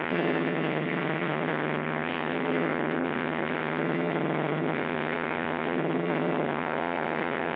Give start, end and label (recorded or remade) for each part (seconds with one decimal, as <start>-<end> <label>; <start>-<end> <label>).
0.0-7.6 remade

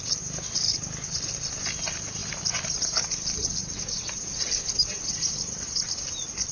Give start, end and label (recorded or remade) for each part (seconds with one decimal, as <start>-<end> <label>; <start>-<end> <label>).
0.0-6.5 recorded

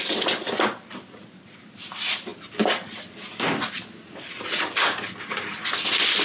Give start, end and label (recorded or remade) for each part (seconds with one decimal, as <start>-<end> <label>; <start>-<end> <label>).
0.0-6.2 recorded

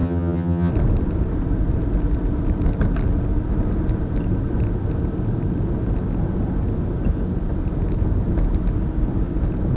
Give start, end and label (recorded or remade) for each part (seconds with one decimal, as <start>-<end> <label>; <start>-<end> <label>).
0.0-0.7 remade; 0.7-9.8 recorded

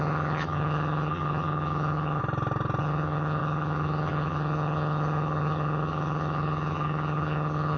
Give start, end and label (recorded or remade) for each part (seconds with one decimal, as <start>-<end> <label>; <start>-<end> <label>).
0.0-2.2 remade; 2.2-2.8 recorded; 2.8-7.8 remade

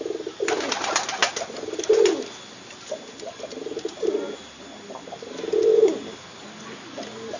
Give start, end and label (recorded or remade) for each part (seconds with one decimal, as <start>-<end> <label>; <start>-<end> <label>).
0.0-7.4 recorded

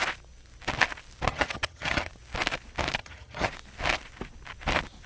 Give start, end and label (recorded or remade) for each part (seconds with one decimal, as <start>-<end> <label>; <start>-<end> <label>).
0.0-1.3 recorded; 1.3-2.1 remade; 2.1-3.0 recorded; 3.0-3.5 remade; 3.5-5.1 recorded